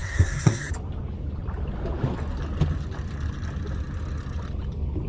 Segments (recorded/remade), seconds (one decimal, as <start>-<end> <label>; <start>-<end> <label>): 0.0-0.7 remade; 0.7-5.1 recorded